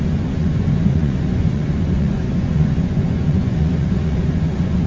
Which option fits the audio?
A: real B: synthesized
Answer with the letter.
B